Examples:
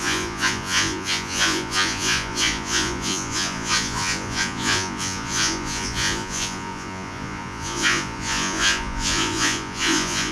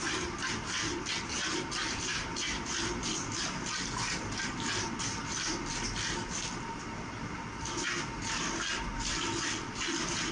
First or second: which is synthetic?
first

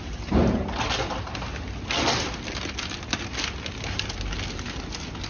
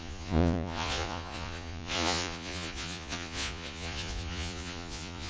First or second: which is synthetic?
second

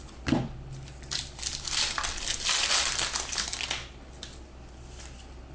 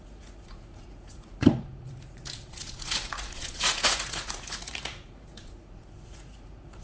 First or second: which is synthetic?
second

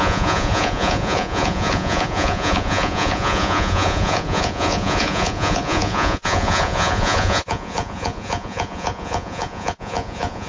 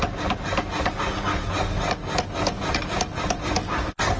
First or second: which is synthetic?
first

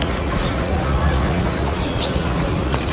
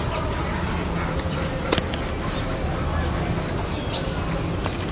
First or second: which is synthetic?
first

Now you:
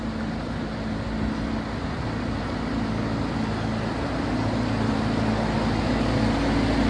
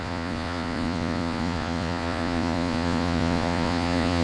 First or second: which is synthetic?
second